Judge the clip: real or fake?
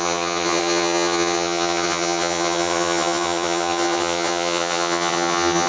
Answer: fake